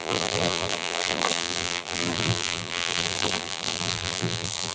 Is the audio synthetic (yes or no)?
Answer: yes